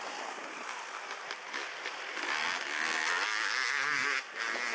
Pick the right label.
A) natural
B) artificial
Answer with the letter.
A